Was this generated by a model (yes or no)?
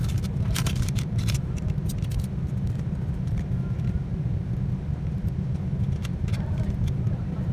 yes